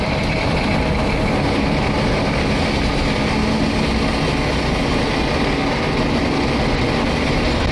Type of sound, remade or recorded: recorded